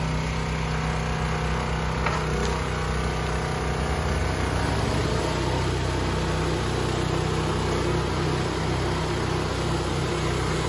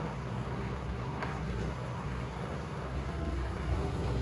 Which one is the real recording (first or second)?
first